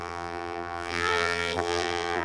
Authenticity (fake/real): fake